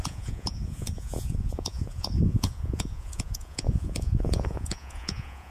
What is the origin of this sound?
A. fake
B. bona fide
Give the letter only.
A